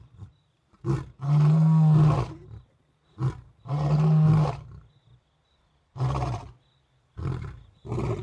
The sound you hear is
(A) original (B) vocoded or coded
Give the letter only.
A